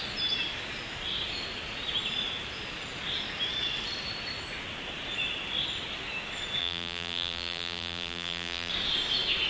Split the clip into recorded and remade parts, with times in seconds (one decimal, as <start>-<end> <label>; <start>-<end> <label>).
0.0-6.6 recorded; 6.6-8.7 remade; 8.7-9.5 recorded